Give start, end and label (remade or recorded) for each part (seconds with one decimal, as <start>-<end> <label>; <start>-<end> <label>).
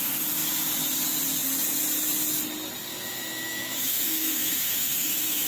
0.0-2.9 recorded; 2.9-5.5 remade